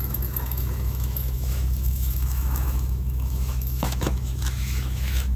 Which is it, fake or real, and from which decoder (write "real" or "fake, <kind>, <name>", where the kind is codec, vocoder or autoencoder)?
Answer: fake, autoencoder, DAC-VAE